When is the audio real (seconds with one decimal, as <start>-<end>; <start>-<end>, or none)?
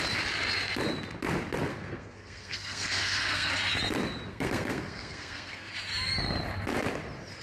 0.0-1.7; 3.5-4.3; 5.7-7.4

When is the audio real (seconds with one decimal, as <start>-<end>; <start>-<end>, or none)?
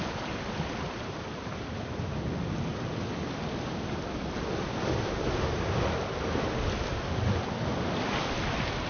0.0-8.9